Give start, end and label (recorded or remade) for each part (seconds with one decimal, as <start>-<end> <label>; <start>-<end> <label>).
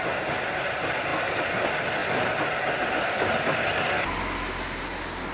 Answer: 0.0-5.3 recorded